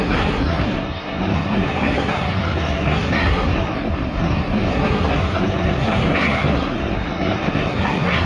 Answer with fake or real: fake